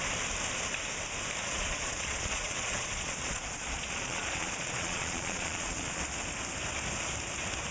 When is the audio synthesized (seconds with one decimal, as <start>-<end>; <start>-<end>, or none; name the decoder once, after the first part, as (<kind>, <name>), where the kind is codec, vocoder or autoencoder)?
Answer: 1.4-6.0 (vocoder, Vocos)